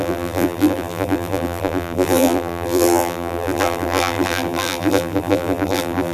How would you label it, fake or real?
fake